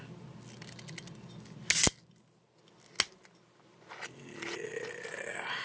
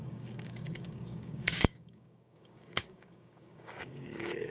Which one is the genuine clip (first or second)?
first